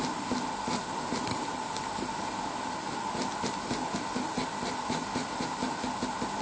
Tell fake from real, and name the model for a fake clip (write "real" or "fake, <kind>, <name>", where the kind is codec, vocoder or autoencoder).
real